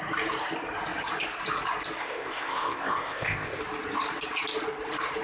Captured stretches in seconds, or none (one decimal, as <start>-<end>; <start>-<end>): 0.0-2.0; 3.6-5.2